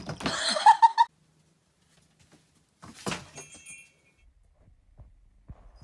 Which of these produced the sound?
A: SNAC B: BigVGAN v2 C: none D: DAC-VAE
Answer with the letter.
C